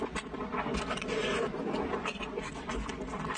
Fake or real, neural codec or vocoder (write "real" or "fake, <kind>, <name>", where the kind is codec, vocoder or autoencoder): real